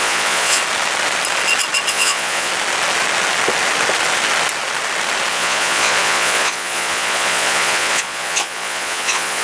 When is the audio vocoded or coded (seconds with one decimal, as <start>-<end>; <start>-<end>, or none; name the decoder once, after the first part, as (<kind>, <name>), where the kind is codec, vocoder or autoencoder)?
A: 0.0-0.6 (vocoder, Vocos); 1.9-2.5; 5.3-9.4